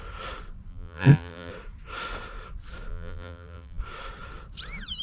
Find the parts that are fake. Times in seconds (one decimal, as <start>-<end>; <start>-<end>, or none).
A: 0.7-1.5; 2.9-3.8